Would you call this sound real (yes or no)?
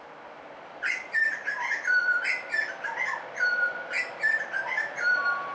yes